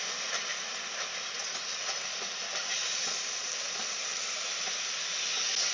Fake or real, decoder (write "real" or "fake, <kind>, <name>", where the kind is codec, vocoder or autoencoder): real